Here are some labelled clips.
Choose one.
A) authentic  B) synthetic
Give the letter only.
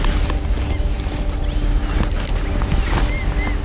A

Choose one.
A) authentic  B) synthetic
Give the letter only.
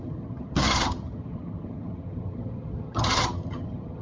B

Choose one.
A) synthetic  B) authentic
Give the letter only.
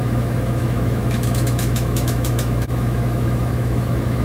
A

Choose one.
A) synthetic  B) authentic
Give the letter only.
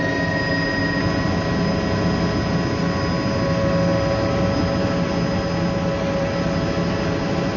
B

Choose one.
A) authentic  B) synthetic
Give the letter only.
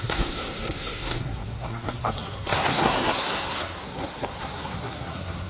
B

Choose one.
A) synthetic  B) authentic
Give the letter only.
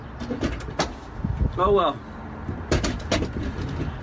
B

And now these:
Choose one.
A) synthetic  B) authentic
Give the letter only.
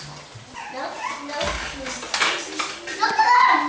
B